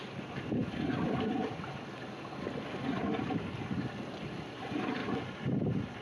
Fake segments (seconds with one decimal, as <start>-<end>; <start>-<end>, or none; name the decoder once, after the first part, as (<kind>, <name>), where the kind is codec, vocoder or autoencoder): none